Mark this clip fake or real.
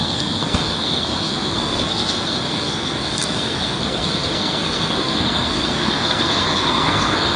fake